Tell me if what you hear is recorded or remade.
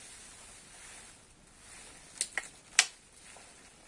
recorded